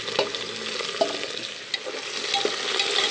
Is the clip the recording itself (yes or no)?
yes